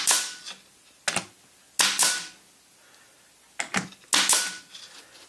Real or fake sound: real